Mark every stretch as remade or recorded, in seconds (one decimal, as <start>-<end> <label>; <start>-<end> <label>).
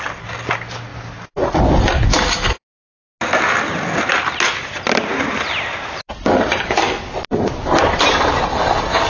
0.0-9.1 recorded